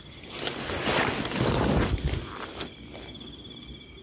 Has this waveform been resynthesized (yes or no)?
no